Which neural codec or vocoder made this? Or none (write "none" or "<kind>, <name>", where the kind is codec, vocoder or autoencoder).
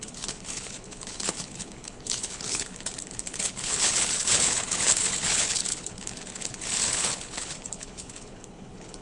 codec, HILCodec